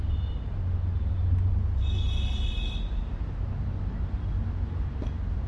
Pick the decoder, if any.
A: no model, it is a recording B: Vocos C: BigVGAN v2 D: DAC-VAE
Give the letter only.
A